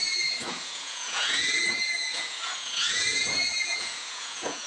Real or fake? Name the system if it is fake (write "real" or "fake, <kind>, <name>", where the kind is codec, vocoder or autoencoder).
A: fake, vocoder, Vocos